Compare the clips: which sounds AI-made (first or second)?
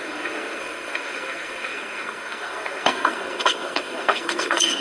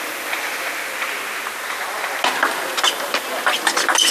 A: first